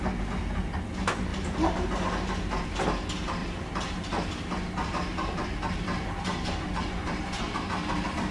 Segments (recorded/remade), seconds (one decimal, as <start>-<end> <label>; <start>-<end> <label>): 0.0-1.3 recorded; 1.3-2.1 remade; 2.1-3.4 recorded; 3.4-7.4 remade; 7.4-8.3 recorded